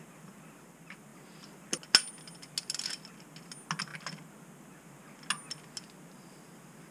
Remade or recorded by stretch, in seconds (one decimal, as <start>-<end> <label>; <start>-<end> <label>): 0.0-6.9 recorded